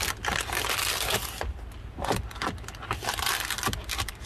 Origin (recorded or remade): recorded